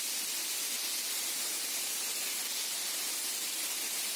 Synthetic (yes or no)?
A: no